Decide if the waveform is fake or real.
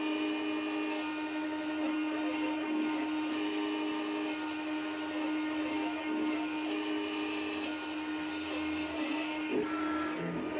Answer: real